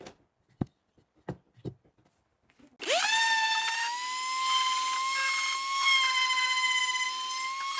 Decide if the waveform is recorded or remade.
recorded